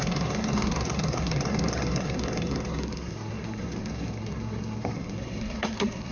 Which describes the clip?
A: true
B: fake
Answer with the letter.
B